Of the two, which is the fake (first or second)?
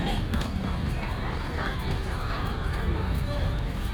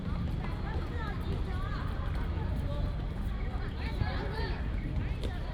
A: first